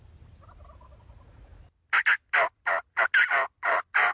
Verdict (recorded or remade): recorded